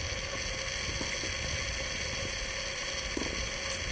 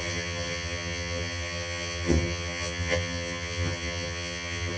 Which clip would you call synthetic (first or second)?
second